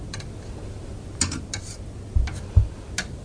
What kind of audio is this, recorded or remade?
recorded